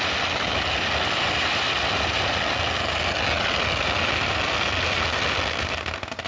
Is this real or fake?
real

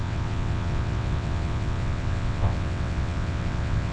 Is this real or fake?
fake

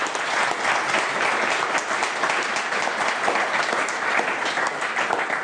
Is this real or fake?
real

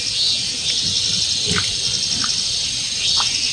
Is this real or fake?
real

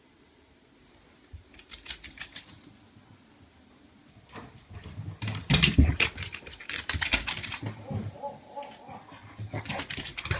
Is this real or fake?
real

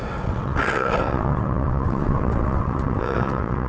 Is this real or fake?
fake